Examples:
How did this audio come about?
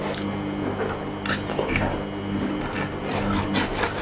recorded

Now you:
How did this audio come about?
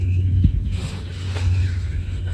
remade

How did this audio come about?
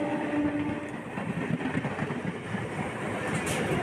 recorded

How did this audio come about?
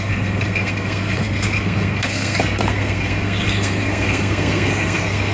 remade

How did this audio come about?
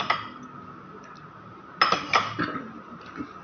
recorded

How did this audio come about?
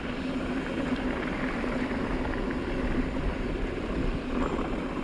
recorded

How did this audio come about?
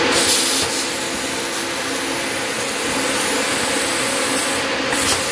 recorded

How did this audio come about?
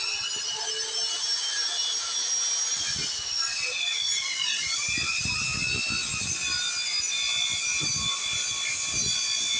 recorded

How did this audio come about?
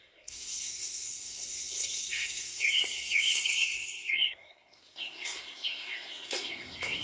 remade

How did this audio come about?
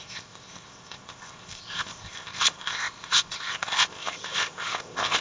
remade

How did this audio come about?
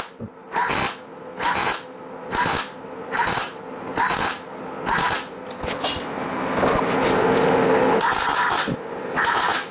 recorded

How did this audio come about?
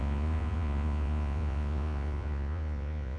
remade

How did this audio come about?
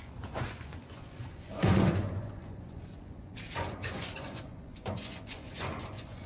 remade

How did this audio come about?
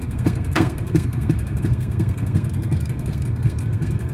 remade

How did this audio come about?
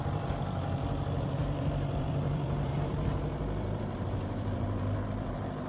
remade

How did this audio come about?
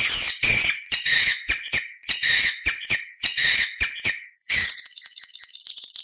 remade